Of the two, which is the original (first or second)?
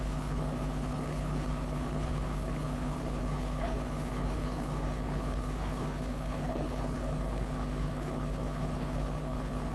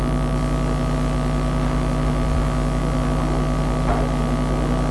second